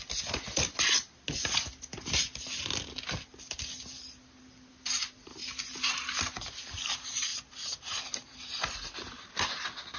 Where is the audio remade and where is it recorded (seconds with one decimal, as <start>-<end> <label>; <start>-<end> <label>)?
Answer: 0.0-10.0 recorded